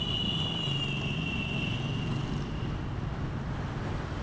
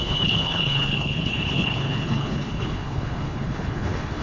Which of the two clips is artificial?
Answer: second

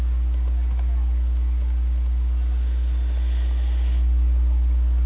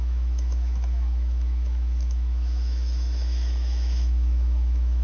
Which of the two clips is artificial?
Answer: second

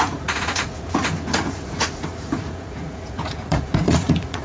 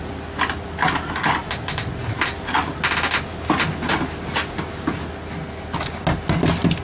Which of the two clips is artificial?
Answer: first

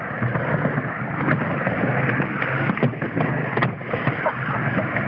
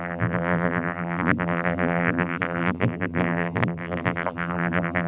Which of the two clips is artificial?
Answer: second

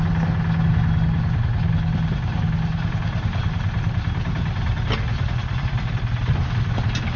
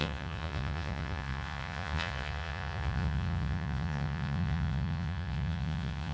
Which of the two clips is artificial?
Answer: second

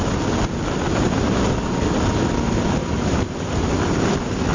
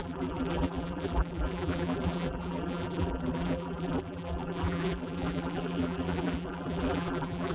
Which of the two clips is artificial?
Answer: second